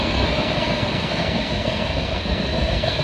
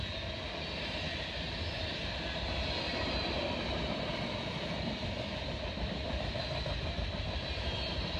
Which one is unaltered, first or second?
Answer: second